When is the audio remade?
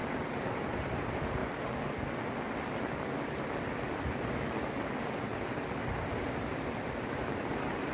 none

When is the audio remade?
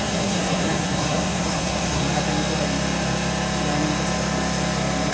0.0-2.0 (codec, SNAC)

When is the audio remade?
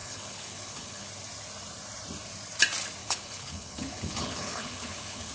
0.0-1.1 (codec, HILCodec); 3.0-5.3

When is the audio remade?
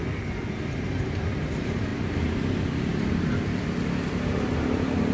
0.0-1.9 (vocoder, BigVGAN v2); 2.9-5.1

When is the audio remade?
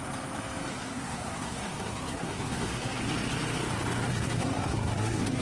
0.7-3.0 (codec, SNAC); 4.1-5.4